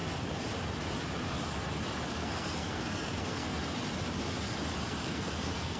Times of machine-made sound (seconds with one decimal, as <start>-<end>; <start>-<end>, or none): 2.2-3.6; 4.8-5.8